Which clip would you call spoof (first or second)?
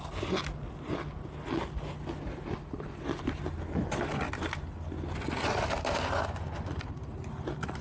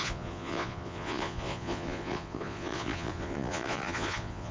second